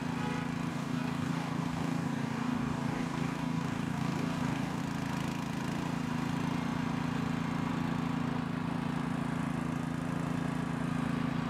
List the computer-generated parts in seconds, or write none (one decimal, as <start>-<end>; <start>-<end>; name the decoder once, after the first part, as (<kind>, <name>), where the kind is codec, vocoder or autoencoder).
0.7-4.8 (codec, DAC)

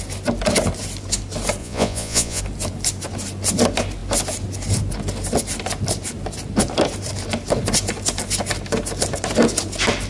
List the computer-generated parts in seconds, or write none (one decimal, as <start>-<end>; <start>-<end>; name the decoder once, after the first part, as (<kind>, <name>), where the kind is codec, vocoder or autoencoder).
1.6-2.4 (vocoder, Vocos)